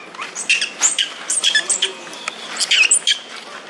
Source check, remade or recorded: recorded